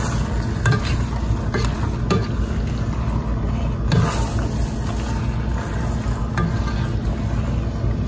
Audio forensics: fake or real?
real